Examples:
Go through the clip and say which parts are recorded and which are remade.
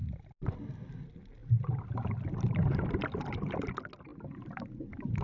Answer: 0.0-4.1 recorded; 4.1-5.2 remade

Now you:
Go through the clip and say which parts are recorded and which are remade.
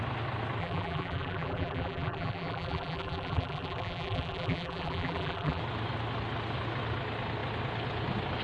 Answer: 0.0-0.6 recorded; 0.6-5.6 remade; 5.6-8.4 recorded